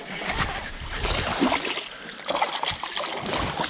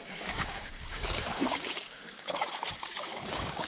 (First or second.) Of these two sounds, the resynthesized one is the second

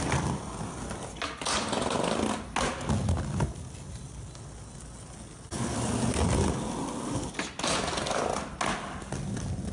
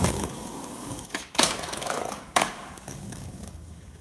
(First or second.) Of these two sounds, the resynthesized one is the second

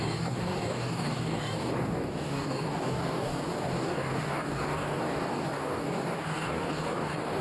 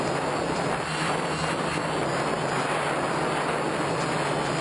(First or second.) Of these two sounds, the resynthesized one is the first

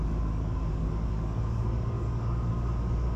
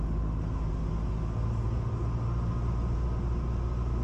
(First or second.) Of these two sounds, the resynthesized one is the first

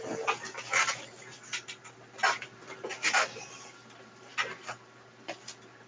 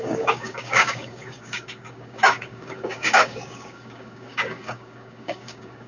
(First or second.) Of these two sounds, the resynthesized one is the second